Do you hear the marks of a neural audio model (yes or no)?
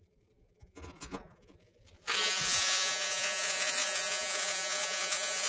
yes